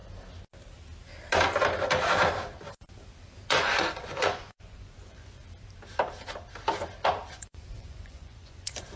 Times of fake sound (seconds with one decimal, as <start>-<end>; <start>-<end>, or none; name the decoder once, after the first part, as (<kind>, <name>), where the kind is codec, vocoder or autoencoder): 3.5-5.4 (vocoder, Vocos); 7.3-9.0